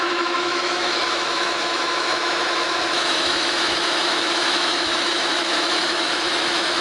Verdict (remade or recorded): remade